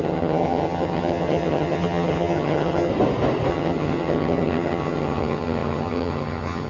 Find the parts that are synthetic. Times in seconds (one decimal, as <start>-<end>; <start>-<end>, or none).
0.0-2.9; 3.5-6.7